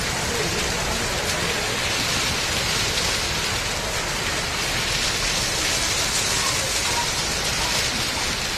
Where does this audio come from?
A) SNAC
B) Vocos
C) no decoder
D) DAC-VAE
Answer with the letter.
C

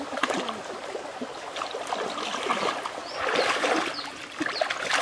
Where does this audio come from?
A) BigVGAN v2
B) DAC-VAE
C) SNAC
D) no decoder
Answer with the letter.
D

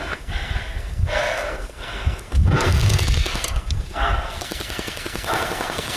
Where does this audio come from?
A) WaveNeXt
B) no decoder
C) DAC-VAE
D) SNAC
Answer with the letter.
D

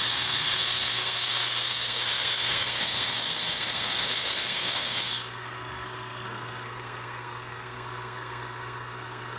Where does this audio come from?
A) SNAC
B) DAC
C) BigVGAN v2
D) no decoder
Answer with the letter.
A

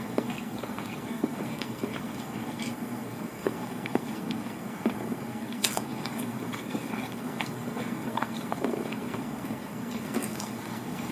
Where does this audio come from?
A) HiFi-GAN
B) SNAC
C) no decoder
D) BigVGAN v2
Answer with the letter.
B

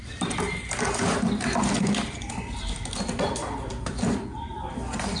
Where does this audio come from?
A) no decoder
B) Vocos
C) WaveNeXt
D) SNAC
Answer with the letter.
A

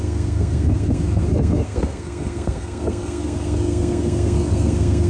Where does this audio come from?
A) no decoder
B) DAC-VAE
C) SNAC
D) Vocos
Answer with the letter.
C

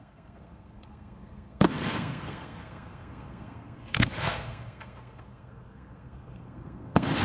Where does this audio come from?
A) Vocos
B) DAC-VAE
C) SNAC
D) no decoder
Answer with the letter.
C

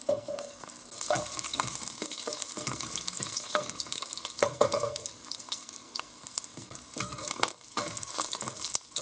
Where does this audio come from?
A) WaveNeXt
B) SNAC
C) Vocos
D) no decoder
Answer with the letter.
B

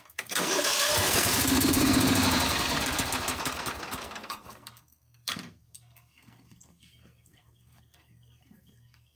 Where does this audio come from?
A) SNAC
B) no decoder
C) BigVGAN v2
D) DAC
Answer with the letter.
A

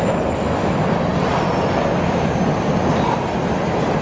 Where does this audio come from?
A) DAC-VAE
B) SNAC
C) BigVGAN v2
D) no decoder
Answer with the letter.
D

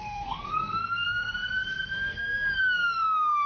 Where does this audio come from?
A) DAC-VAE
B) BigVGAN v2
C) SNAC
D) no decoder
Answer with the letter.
C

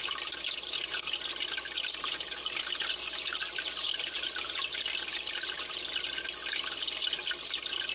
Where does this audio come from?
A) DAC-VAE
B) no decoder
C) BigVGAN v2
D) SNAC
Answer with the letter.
B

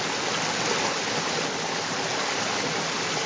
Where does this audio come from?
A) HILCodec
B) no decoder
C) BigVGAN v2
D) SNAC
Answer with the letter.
B